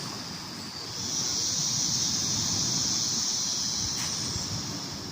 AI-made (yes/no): no